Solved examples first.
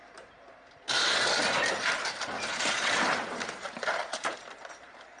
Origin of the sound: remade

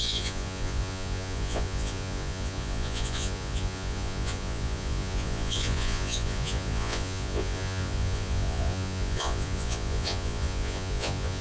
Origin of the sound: remade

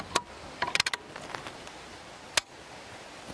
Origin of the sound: recorded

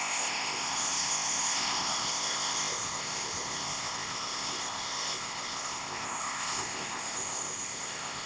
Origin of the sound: remade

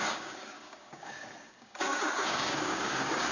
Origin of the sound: remade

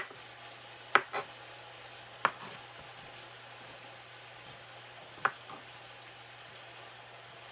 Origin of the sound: recorded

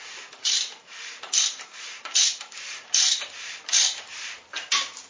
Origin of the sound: remade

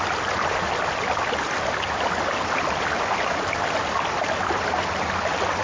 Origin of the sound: recorded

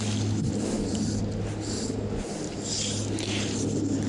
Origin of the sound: recorded